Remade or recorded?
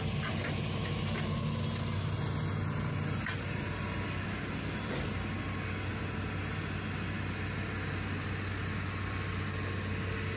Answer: recorded